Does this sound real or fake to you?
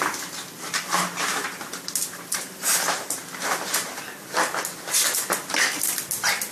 fake